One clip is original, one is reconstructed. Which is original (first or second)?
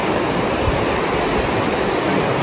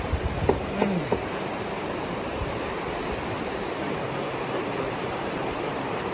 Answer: first